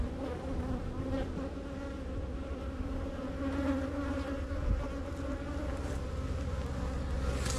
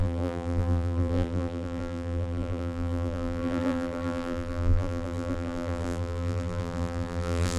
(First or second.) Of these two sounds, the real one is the first